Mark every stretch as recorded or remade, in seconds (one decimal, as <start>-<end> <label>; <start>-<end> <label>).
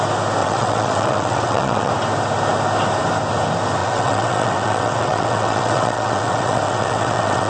0.0-0.4 recorded; 0.4-1.9 remade; 1.9-3.8 recorded; 3.8-7.5 remade